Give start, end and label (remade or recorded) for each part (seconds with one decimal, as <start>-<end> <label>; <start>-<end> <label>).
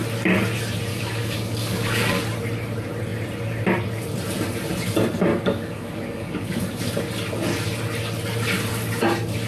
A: 0.0-0.9 recorded; 0.9-2.2 remade; 2.2-5.3 recorded; 5.3-6.8 remade; 6.8-9.5 recorded